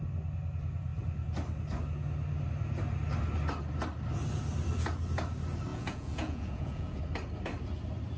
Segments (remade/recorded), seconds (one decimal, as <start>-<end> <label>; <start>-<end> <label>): 0.0-5.7 recorded; 5.7-7.0 remade; 7.0-8.2 recorded